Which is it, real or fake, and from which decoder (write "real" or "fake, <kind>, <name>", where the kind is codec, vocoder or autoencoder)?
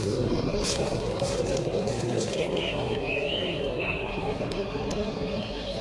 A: fake, codec, SNAC